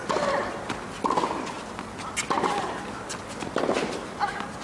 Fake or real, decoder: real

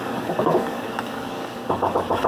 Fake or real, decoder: fake, codec, DAC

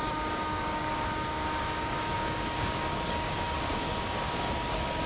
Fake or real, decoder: fake, codec, DAC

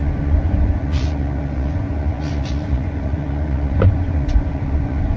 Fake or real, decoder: fake, vocoder, Vocos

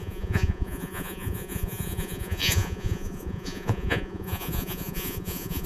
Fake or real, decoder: fake, vocoder, Vocos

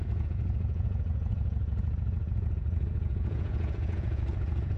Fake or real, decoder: fake, vocoder, Vocos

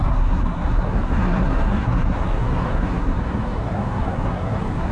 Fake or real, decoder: fake, codec, SNAC